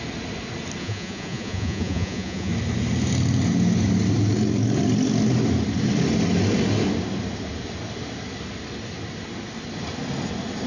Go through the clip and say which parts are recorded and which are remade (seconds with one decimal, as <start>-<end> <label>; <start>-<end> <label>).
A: 0.0-0.8 recorded; 0.8-2.5 remade; 2.5-10.7 recorded